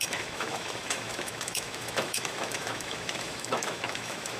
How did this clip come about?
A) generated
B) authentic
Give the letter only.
A